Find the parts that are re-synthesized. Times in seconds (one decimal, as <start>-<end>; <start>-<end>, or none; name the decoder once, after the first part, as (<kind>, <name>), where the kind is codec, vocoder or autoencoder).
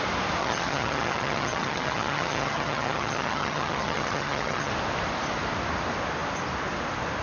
0.4-4.7 (vocoder, HiFi-GAN)